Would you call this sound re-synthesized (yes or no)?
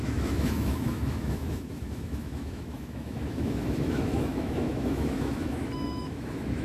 yes